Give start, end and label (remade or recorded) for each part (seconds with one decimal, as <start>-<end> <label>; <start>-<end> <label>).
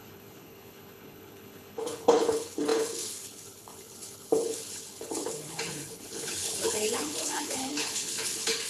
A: 0.0-8.7 remade